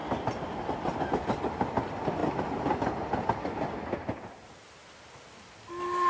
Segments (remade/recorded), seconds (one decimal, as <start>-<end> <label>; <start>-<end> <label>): 0.0-6.1 recorded